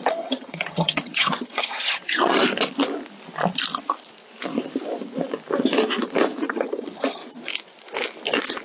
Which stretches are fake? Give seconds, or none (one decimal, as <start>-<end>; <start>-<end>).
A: 0.0-2.4; 6.5-7.2